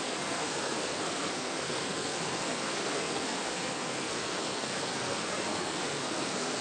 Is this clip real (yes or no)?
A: no